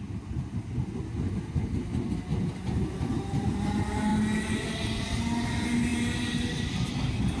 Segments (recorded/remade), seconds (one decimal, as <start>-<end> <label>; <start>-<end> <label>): 0.0-7.4 recorded